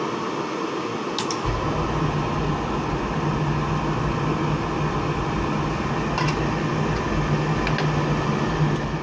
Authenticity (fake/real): real